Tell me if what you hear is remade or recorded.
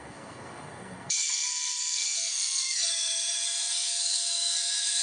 remade